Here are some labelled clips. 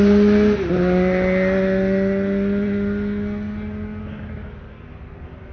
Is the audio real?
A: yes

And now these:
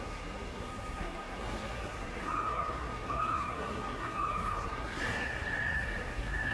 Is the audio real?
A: no